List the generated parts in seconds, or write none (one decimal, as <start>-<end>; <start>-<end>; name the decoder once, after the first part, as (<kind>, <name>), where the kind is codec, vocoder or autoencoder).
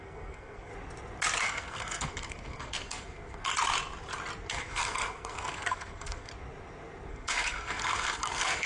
0.0-0.7 (codec, SNAC); 1.4-3.5; 4.5-6.3; 7.1-8.7